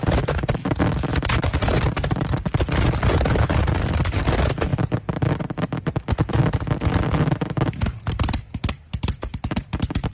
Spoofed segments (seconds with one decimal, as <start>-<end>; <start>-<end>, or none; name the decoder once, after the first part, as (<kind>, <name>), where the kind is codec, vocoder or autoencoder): 1.1-1.8 (vocoder, BigVGAN v2)